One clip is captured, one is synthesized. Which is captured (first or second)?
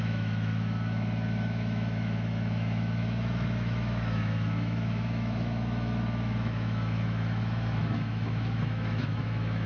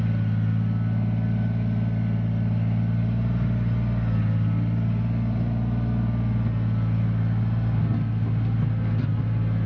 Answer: second